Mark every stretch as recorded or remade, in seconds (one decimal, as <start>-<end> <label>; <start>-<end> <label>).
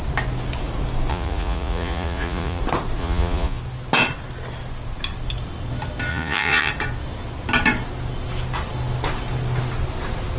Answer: 0.0-1.1 recorded; 1.1-2.6 remade; 2.6-3.0 recorded; 3.0-3.6 remade; 3.6-6.1 recorded; 6.1-6.7 remade; 6.7-10.4 recorded